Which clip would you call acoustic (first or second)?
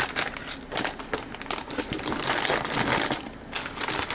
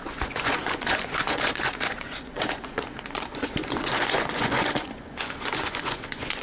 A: first